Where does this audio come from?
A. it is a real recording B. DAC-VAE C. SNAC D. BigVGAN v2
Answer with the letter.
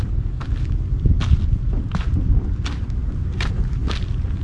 A